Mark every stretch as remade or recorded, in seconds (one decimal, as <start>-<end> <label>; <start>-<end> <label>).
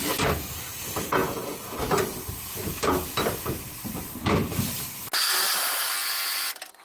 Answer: 0.0-1.2 recorded; 1.2-1.8 remade; 1.8-6.8 recorded